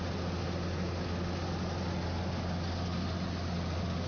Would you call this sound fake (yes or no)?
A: no